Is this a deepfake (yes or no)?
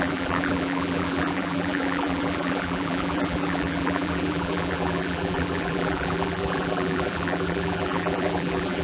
yes